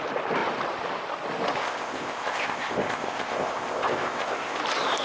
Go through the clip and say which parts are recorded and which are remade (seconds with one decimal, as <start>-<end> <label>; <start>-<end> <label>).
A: 0.0-1.6 recorded; 1.6-4.6 remade; 4.6-5.0 recorded

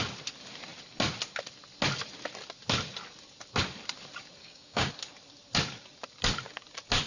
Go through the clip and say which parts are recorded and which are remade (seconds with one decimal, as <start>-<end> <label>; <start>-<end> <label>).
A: 0.0-4.4 recorded; 4.4-4.9 remade; 4.9-7.1 recorded